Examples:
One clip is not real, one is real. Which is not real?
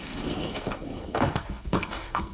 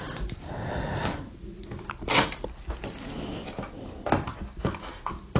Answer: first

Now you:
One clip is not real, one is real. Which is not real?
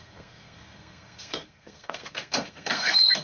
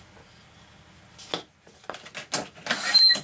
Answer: first